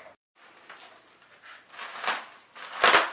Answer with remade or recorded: recorded